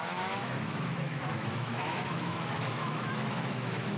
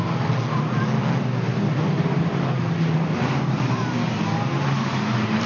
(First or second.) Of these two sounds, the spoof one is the first